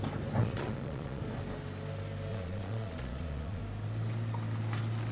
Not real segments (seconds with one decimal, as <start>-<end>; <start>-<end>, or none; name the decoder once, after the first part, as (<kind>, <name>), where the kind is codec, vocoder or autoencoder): 0.4-1.2 (vocoder, Vocos); 2.3-3.6